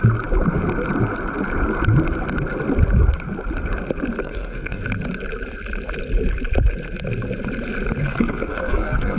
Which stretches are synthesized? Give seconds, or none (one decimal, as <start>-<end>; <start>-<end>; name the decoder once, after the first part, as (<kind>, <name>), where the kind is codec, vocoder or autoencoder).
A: 4.2-4.8 (codec, SNAC); 8.0-9.2